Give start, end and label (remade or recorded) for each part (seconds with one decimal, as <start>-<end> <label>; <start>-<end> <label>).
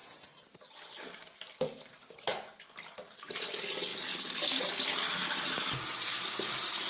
0.0-0.7 remade; 0.7-1.2 recorded; 1.2-1.9 remade; 1.9-3.9 recorded; 3.9-4.7 remade; 4.7-6.9 recorded